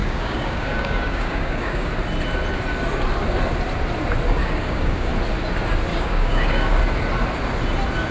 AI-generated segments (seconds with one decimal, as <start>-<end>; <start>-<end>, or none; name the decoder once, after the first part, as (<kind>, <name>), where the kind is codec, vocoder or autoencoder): 0.0-1.9 (codec, DAC); 4.4-5.1; 5.9-6.8